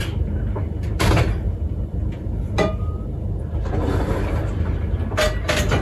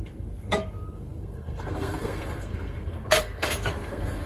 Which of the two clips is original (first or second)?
first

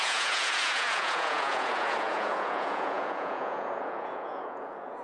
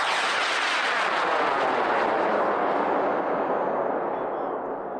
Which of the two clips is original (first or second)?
second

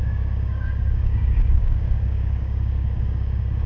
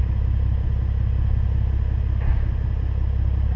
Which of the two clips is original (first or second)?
second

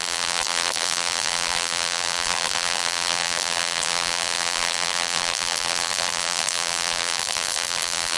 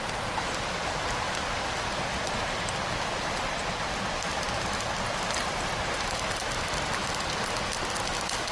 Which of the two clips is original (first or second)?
second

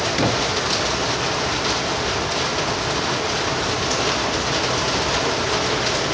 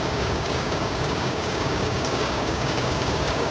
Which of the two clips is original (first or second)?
first